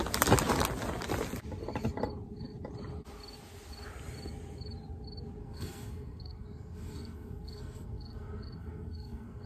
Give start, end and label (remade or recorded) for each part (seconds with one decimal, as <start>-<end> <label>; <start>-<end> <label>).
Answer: 0.0-5.4 recorded; 5.4-9.5 remade